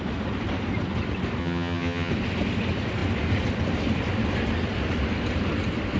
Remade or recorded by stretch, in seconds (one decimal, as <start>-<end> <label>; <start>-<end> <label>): 0.0-1.4 recorded; 1.4-2.1 remade; 2.1-6.0 recorded